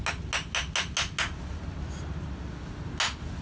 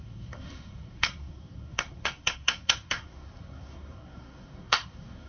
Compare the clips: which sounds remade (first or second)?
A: second